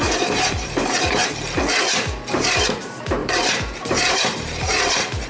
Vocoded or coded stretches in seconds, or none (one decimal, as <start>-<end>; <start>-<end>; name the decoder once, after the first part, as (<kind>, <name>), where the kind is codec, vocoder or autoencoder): 0.0-1.2 (vocoder, BigVGAN v2); 2.3-5.3